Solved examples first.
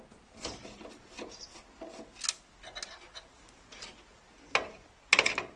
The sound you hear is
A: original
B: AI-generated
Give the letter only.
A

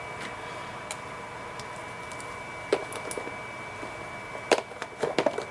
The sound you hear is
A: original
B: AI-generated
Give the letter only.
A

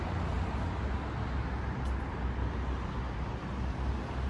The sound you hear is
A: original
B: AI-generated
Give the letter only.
A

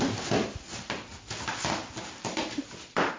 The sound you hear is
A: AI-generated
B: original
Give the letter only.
B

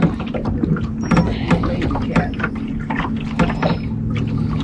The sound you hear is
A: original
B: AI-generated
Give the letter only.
A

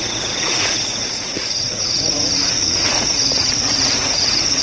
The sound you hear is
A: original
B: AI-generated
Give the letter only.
B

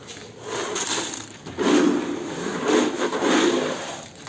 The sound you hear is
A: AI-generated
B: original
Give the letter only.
B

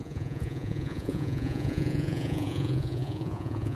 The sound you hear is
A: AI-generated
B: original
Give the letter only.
A